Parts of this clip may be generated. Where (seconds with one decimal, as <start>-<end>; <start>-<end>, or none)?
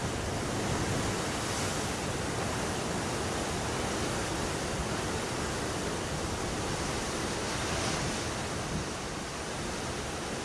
4.8-7.0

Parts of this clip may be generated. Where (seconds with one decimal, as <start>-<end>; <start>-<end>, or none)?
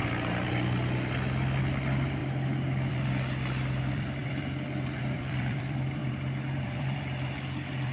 1.6-2.2; 2.9-7.9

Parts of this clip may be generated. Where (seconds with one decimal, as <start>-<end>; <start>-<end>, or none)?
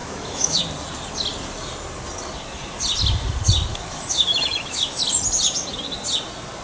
0.0-0.6; 3.7-5.0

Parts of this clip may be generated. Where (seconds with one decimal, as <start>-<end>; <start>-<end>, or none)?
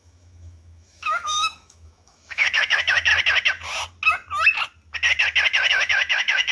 0.0-3.1; 5.7-6.5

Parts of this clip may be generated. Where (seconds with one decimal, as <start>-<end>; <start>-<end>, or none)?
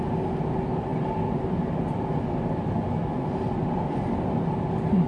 0.9-3.7